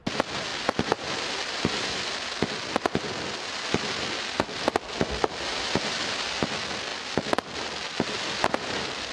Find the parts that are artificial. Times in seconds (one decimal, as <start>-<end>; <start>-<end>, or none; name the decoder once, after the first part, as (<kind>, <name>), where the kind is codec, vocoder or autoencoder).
none